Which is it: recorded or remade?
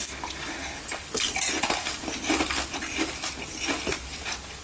recorded